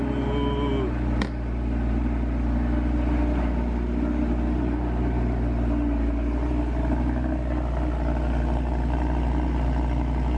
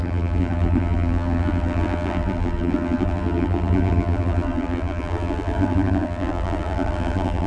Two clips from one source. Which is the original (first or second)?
first